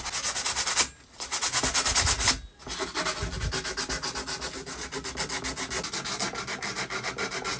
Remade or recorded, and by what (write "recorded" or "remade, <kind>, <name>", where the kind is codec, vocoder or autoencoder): recorded